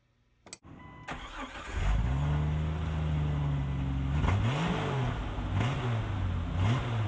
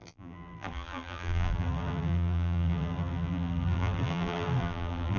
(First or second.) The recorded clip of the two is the first